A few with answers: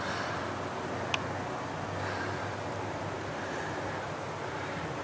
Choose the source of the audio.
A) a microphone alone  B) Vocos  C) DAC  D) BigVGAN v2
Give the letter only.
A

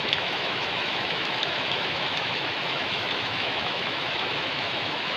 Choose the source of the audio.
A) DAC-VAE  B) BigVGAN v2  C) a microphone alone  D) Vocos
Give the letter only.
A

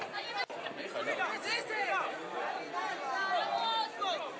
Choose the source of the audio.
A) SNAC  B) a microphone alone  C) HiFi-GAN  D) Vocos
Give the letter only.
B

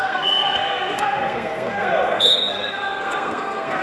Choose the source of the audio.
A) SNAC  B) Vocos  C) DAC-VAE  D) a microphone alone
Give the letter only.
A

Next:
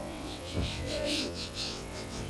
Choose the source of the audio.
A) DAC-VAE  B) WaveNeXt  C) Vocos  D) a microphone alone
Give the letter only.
B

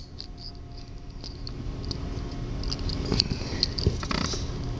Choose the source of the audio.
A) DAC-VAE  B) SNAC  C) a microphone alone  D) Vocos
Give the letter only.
C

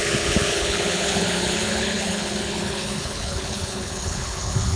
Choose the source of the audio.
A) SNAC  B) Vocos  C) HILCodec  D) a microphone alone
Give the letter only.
C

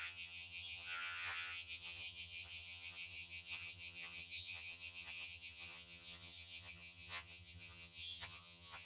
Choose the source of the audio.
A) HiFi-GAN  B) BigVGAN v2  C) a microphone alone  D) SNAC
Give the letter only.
A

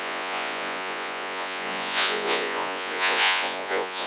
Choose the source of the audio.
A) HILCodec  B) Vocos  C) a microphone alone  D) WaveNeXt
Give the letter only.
B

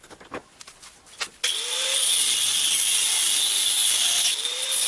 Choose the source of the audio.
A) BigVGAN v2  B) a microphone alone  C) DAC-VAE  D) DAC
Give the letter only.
B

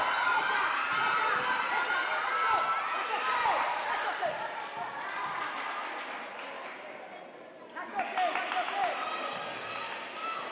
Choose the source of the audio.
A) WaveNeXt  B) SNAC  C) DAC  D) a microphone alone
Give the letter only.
D